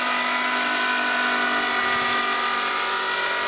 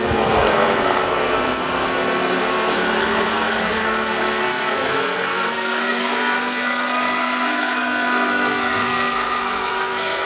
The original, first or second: first